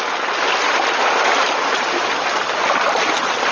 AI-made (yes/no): no